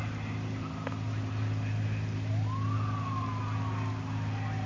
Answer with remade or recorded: recorded